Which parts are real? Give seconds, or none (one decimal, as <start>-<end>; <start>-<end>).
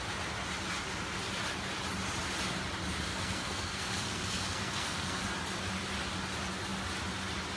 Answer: 0.0-3.1; 5.2-7.6